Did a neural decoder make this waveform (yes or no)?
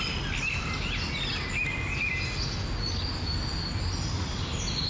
no